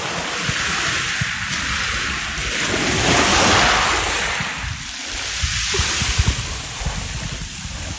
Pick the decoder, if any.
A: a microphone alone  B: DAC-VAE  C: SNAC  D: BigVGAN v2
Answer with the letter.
A